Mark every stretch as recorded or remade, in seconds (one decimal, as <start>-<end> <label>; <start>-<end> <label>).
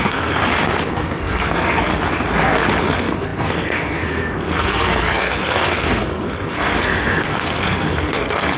0.0-0.4 remade; 0.4-0.9 recorded; 0.9-1.9 remade; 1.9-2.8 recorded; 2.8-8.6 remade